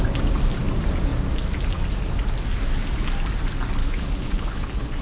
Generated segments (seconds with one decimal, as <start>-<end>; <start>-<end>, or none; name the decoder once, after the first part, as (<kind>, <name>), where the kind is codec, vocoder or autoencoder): 3.8-5.0 (codec, HILCodec)